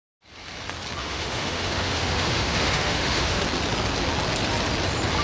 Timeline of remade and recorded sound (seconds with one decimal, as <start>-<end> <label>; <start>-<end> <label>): 0.0-1.0 recorded; 1.0-3.4 remade; 3.4-5.2 recorded